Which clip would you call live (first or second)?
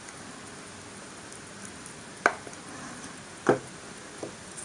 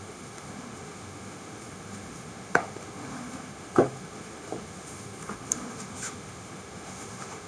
first